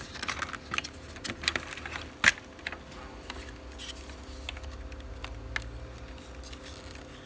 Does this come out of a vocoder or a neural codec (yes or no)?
no